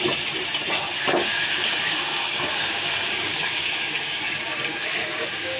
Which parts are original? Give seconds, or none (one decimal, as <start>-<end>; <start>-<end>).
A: 0.0-1.2; 4.2-4.7